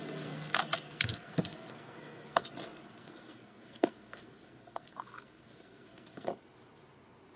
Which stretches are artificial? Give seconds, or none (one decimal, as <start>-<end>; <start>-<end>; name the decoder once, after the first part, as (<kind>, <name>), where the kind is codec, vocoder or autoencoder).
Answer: 0.0-6.3 (codec, SNAC)